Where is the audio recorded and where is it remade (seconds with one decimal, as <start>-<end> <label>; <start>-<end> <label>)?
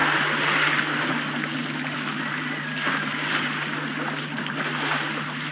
0.0-5.5 recorded